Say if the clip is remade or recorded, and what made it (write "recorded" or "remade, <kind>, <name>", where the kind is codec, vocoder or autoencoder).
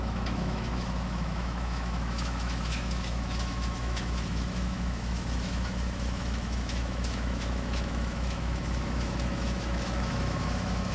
remade, autoencoder, DAC-VAE